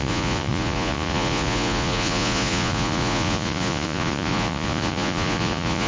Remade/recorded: remade